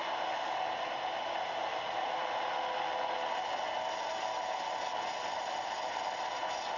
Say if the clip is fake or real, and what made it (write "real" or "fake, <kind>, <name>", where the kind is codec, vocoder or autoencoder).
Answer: real